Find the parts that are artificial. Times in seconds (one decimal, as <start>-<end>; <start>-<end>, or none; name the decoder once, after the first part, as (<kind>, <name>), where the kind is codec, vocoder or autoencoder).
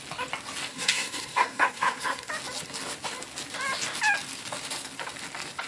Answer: 0.7-2.3 (codec, SNAC)